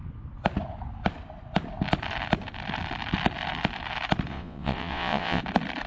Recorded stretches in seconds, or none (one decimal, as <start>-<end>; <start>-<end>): 0.0-4.3; 5.4-5.9